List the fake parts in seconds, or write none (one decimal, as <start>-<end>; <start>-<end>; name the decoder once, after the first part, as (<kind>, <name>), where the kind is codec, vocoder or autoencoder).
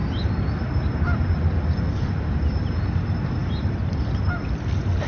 0.0-2.5 (vocoder, BigVGAN v2); 3.4-4.2